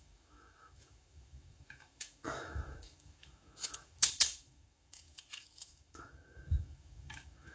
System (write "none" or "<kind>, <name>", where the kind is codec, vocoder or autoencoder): autoencoder, DAC-VAE